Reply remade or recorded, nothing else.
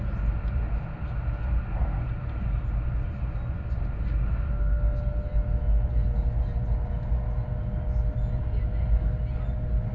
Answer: recorded